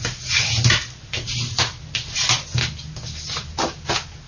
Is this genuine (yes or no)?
yes